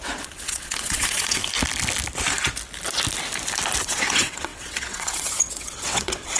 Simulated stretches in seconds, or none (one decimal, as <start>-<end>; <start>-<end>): 0.0-1.4; 3.8-6.4